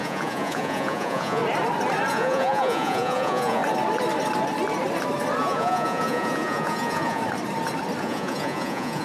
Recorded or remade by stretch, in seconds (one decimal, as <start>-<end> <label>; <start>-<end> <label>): 0.0-1.4 remade; 1.4-2.1 recorded; 2.1-3.6 remade; 3.6-5.4 recorded; 5.4-7.2 remade; 7.2-8.0 recorded; 8.0-9.0 remade